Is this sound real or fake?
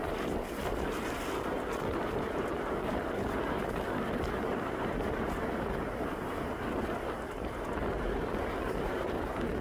real